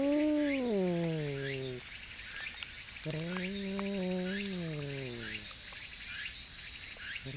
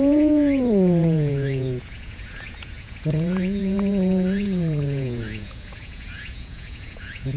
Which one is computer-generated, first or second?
second